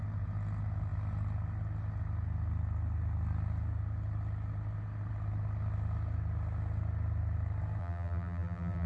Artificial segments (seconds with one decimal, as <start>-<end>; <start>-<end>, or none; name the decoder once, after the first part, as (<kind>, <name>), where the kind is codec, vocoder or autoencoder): 7.8-8.9 (vocoder, BigVGAN v2)